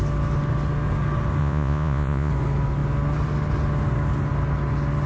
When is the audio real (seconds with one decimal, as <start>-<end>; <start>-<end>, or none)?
0.0-1.4; 2.3-5.1